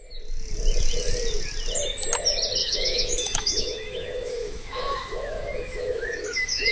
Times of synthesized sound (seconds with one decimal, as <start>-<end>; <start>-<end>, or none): 2.6-6.7